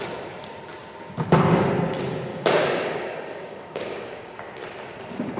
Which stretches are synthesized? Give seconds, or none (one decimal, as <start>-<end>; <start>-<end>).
2.3-4.4